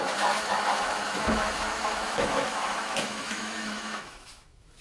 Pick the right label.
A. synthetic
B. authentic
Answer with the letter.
A